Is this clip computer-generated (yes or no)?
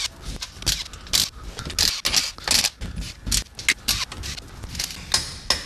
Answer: no